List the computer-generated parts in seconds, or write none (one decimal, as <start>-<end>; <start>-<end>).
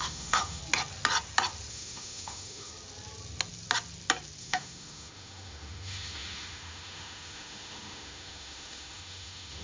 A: 0.0-0.6; 1.7-2.7; 4.4-9.6